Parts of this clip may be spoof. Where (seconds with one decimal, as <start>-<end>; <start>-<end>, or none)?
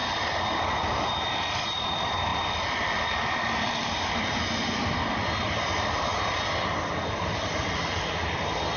0.0-1.0; 2.3-4.3